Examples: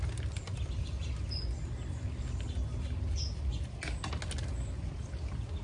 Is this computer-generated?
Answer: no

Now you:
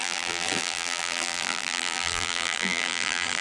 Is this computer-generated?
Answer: yes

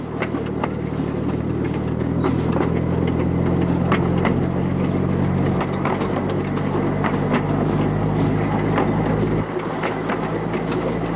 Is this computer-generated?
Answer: no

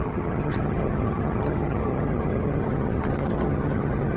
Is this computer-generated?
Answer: yes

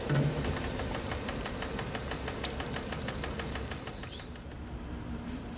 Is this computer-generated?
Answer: no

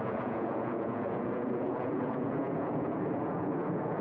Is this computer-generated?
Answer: yes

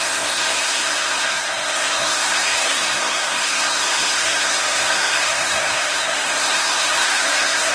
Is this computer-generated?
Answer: yes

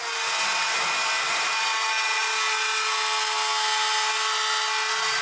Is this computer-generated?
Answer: no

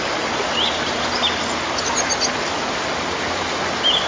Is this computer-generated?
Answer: no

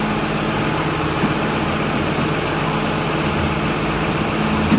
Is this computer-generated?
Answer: no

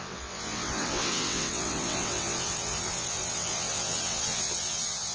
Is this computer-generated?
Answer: yes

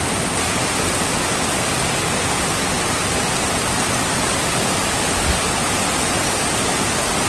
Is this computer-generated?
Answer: no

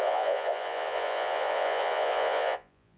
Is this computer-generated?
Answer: yes